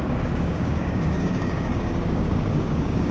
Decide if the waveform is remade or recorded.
remade